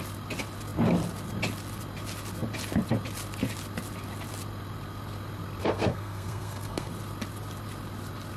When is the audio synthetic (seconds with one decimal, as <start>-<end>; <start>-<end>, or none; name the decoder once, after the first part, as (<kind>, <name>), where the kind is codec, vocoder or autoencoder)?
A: 5.6-6.9 (codec, SNAC)